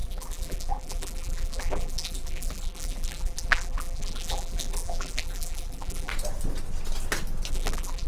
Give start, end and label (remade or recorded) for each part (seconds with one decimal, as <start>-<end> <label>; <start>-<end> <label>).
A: 0.0-6.1 remade; 6.1-7.5 recorded; 7.5-8.1 remade